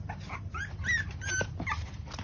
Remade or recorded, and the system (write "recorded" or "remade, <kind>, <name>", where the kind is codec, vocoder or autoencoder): recorded